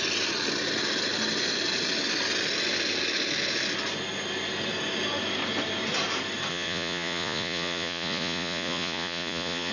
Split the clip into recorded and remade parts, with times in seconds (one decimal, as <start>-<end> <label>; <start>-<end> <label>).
0.0-6.5 recorded; 6.5-9.7 remade